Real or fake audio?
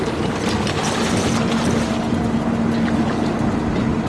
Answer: real